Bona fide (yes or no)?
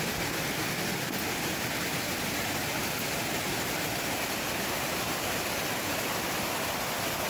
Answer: yes